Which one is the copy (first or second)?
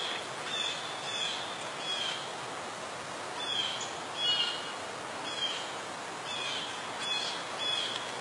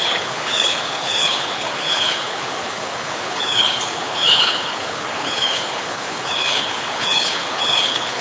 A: second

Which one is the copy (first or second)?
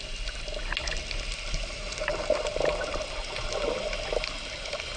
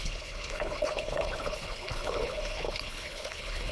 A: second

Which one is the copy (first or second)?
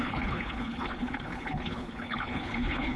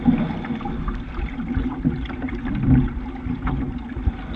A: first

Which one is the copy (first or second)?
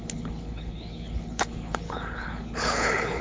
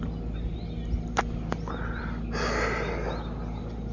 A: first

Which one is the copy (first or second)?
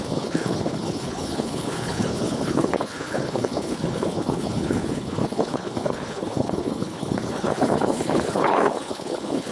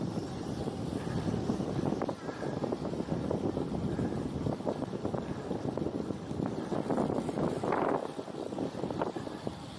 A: first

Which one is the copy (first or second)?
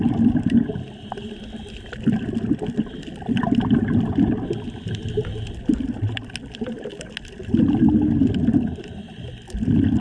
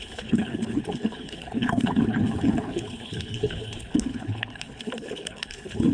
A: second